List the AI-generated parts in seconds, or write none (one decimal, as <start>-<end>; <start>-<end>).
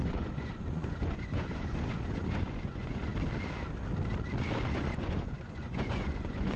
0.0-3.1; 4.7-6.6